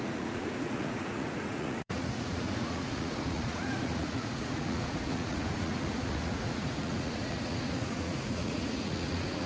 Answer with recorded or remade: remade